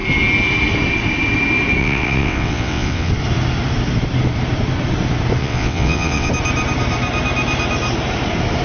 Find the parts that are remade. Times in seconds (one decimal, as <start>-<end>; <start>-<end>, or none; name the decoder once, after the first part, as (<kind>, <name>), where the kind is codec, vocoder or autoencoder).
1.8-3.1 (vocoder, WaveNeXt); 5.4-6.3